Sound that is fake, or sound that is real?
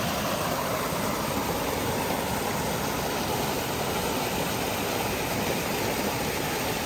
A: real